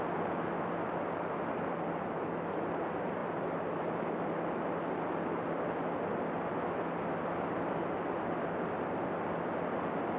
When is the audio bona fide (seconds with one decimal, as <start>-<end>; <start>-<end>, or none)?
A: 0.0-10.2